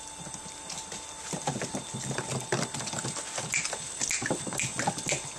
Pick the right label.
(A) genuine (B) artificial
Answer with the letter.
A